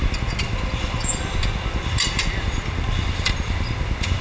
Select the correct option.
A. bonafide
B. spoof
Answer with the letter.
A